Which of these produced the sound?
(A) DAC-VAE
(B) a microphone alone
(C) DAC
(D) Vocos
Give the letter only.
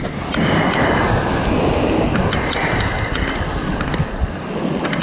B